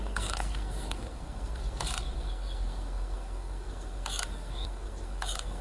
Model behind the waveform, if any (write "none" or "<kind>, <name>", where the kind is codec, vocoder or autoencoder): codec, SNAC